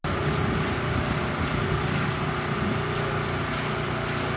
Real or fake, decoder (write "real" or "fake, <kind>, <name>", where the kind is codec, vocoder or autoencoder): real